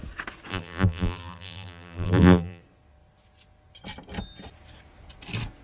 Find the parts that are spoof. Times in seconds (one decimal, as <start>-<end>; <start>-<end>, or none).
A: 0.5-2.6

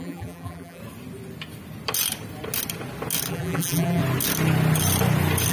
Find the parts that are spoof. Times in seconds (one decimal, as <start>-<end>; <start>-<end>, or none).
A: 0.0-0.8; 3.3-4.0

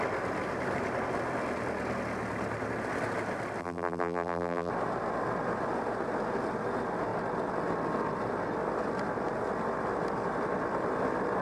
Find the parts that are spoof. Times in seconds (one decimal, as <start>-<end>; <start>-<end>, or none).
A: 3.6-4.7

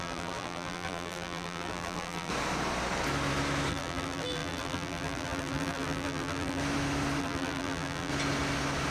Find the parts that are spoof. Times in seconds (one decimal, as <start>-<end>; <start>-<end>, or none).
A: 0.0-2.3; 3.7-6.6; 7.2-8.1

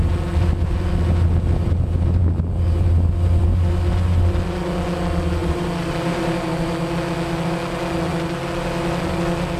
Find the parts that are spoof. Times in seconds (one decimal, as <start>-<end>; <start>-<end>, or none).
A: 5.4-6.5

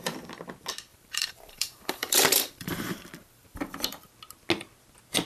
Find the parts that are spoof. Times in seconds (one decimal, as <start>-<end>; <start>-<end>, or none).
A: 0.9-4.1

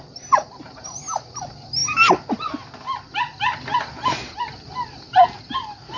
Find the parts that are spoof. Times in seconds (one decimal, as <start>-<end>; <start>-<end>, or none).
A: none

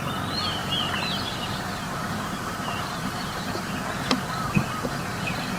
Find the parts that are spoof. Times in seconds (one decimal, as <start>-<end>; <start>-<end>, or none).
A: 0.6-4.0